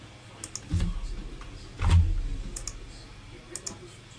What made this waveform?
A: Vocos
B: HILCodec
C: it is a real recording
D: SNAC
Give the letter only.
C